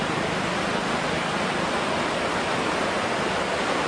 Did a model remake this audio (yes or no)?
no